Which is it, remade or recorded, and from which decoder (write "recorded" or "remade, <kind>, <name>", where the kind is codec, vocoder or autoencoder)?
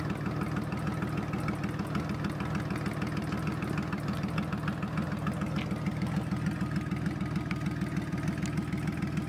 recorded